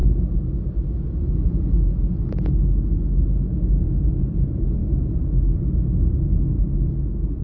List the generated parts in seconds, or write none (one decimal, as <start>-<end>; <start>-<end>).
none